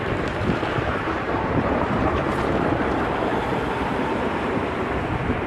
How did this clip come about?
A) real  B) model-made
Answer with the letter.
B